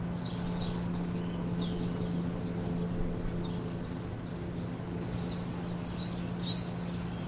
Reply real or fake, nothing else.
real